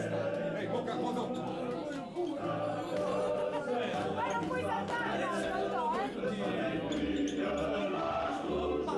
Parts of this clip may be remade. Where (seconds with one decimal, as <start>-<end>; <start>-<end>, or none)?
7.8-8.5